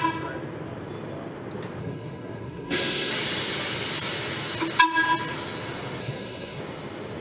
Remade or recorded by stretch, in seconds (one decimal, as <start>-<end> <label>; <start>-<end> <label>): 0.0-1.8 recorded; 1.8-3.1 remade; 3.1-6.0 recorded; 6.0-6.6 remade; 6.6-7.2 recorded